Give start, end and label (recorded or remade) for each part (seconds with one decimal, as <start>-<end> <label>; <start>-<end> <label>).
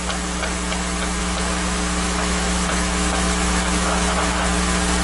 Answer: 0.0-1.2 recorded; 1.2-4.2 remade; 4.2-5.0 recorded